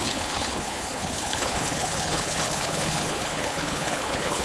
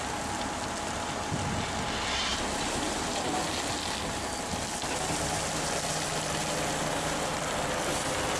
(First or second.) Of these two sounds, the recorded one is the second